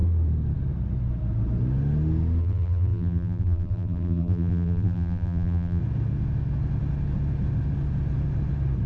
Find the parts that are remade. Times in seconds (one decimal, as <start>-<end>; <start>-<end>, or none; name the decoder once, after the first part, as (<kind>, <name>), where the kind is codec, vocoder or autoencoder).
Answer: 2.4-5.8 (vocoder, BigVGAN v2)

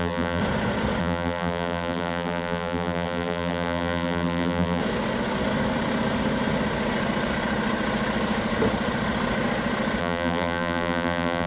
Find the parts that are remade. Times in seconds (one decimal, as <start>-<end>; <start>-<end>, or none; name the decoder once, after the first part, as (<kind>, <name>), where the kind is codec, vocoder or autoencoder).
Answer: 0.0-0.4 (vocoder, BigVGAN v2); 1.0-4.8; 10.0-11.5

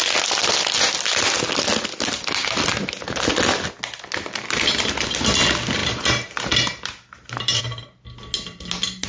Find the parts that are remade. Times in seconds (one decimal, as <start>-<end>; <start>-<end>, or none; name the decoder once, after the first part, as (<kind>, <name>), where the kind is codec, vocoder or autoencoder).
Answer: 5.8-7.6 (vocoder, BigVGAN v2)

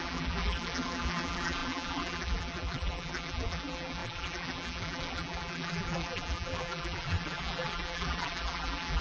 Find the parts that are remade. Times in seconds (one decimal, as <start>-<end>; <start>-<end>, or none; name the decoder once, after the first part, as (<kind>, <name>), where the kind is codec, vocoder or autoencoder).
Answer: 0.0-9.0 (vocoder, BigVGAN v2)

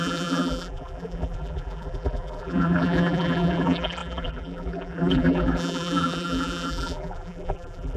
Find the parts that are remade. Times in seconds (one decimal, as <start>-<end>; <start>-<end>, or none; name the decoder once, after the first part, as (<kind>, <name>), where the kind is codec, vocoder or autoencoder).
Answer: 0.0-8.0 (vocoder, BigVGAN v2)

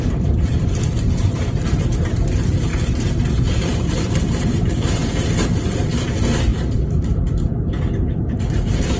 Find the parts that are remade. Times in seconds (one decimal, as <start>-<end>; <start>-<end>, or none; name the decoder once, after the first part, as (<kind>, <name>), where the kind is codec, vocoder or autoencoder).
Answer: 0.0-2.7 (vocoder, BigVGAN v2); 3.3-5.0; 5.7-9.0

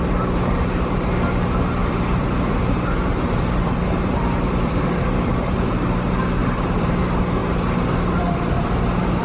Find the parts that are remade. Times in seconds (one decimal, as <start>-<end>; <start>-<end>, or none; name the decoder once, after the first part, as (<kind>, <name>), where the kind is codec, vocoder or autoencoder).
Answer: 1.8-5.7 (vocoder, BigVGAN v2); 6.4-7.0; 7.4-9.2